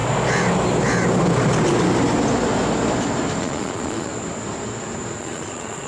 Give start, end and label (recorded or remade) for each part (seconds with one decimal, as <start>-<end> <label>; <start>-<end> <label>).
0.0-3.4 recorded; 3.4-4.1 remade; 4.1-5.2 recorded; 5.2-5.9 remade